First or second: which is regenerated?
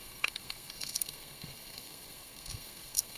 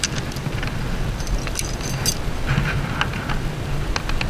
first